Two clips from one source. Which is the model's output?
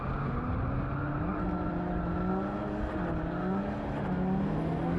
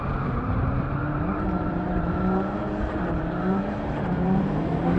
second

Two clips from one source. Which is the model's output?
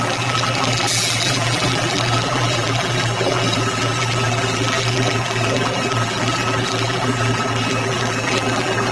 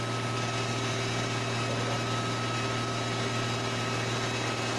first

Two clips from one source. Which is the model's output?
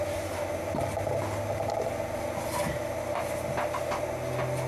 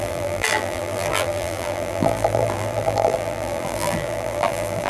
second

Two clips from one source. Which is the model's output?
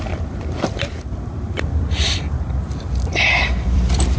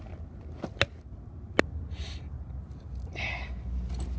first